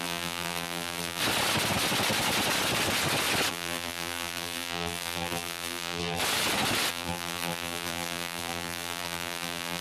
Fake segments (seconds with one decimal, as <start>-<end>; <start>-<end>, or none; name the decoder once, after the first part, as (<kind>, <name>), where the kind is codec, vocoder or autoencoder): 0.0-1.2 (vocoder, BigVGAN v2); 3.5-6.2; 6.9-9.8